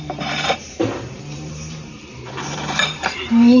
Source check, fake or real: fake